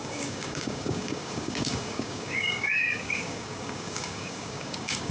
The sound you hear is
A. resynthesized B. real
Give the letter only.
A